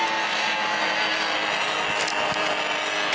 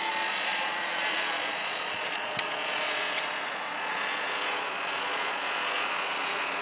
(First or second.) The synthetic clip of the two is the second